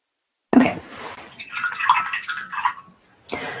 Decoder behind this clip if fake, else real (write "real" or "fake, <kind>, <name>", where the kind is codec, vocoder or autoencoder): real